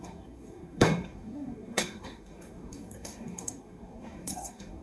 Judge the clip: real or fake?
fake